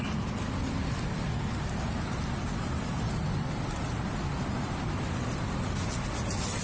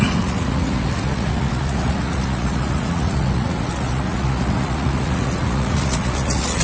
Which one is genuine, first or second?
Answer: first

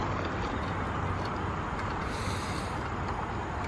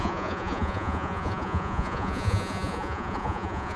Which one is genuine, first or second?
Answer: first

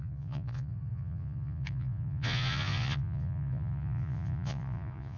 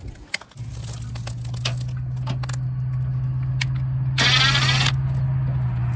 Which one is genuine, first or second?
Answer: second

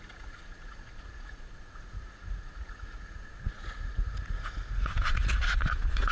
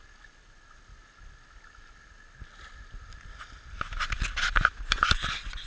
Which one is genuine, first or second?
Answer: second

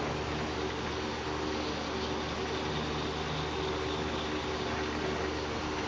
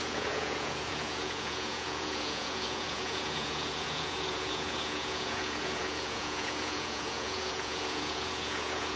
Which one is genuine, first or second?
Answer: first